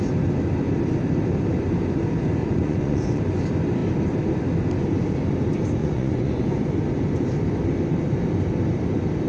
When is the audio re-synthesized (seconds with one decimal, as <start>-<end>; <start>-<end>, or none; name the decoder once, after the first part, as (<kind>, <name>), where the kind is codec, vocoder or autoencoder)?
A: 2.4-3.2 (vocoder, Vocos); 5.8-6.6